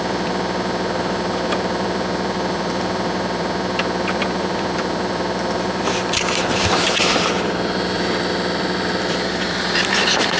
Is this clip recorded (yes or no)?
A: no